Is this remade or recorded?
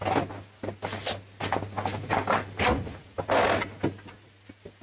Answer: recorded